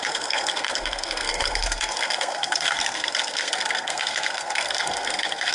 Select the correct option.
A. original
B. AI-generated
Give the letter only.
B